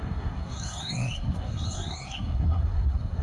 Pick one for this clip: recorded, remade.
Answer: remade